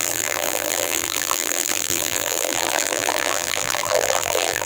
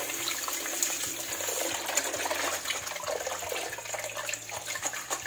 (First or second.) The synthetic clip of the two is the first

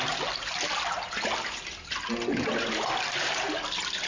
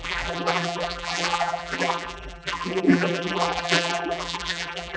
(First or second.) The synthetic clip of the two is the second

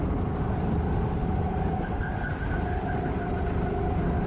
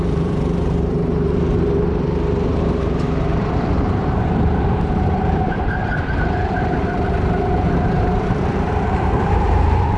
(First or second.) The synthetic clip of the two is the second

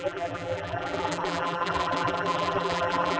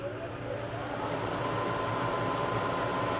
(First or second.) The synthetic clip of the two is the first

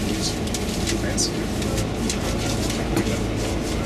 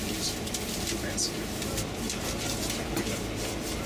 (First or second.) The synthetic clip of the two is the second